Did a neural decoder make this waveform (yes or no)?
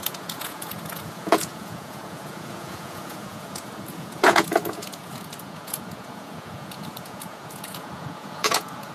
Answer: yes